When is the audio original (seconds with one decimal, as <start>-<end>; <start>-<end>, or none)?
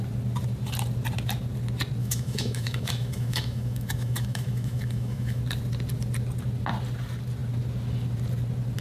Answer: 0.0-2.0; 5.4-8.8